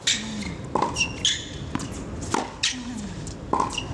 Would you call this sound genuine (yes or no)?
yes